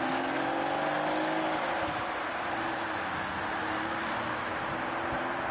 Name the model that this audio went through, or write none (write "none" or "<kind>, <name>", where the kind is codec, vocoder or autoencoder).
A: none